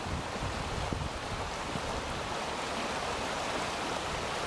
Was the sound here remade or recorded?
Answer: recorded